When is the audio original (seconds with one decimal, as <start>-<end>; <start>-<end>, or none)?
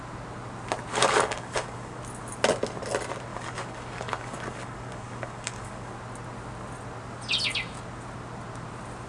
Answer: 0.0-0.9; 2.0-3.3; 5.9-9.1